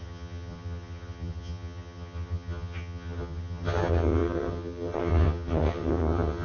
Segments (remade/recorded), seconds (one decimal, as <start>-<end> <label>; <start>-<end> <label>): 0.0-6.4 remade